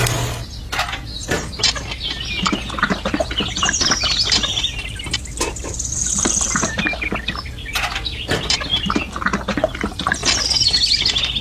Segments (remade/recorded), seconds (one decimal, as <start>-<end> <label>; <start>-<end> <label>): 0.0-4.5 recorded; 4.5-6.7 remade; 6.7-11.4 recorded